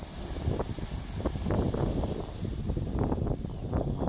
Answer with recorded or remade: recorded